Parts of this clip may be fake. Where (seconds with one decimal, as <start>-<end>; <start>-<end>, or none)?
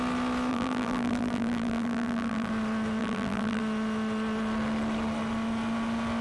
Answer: 0.5-2.5; 3.0-3.6